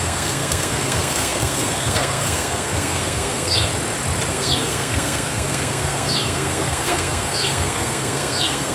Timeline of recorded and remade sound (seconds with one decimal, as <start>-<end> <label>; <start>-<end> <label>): 0.0-3.7 remade; 3.7-4.3 recorded; 4.3-8.7 remade